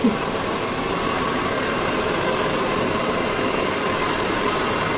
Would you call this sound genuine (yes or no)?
no